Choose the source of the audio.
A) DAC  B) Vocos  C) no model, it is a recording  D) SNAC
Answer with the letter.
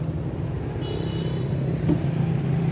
C